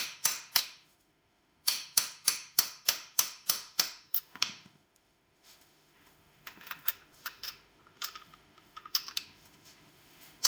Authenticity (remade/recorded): remade